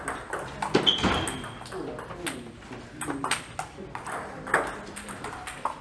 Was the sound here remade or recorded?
recorded